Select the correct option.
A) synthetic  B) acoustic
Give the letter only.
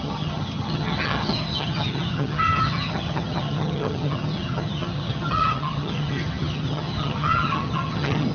A